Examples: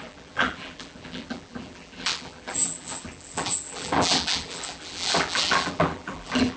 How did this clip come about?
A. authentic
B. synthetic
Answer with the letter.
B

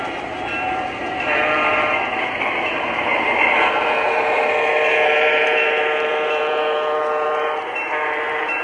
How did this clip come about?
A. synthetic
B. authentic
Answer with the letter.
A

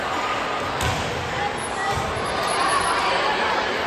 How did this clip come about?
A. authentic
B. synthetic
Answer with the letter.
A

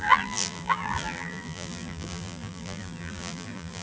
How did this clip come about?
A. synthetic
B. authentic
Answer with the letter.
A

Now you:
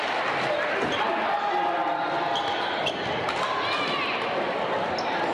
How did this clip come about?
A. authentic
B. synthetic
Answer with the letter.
A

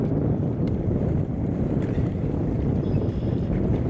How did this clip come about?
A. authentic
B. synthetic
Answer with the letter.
B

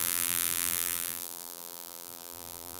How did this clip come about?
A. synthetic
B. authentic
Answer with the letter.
A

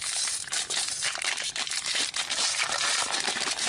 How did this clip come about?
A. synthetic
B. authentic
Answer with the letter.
A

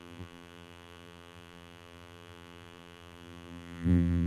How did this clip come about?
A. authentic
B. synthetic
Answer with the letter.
B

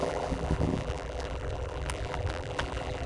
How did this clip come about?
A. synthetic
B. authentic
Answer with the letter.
A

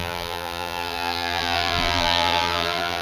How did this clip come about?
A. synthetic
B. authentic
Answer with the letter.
A